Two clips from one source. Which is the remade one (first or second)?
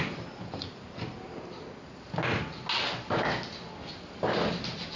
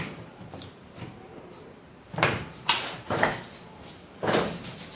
second